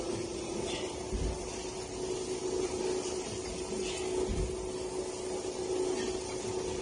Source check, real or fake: real